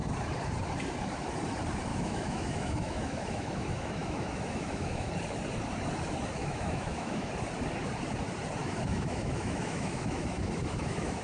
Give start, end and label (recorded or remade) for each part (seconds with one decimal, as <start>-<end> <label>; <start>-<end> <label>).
0.0-1.9 recorded; 1.9-5.1 remade; 5.1-6.4 recorded; 6.4-7.3 remade; 7.3-8.6 recorded; 8.6-11.2 remade